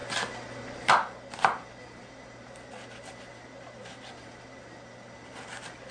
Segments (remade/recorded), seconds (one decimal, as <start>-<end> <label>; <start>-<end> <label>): 0.0-5.9 recorded